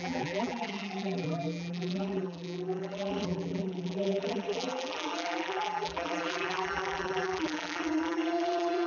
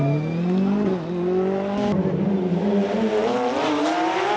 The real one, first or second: second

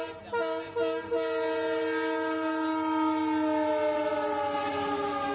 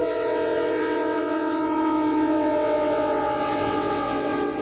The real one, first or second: first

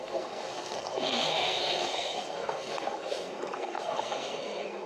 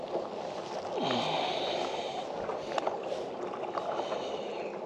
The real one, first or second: second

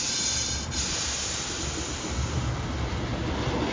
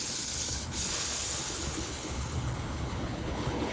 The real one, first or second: first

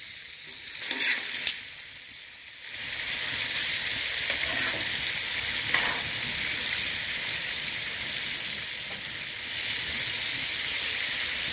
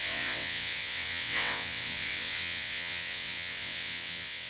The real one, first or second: first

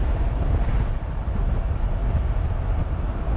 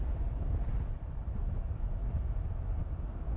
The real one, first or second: first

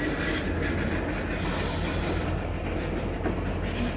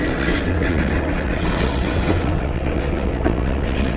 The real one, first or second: first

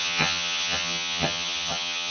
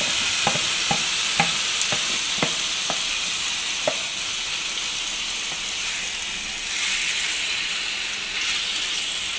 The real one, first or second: second